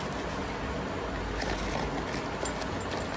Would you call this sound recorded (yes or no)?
yes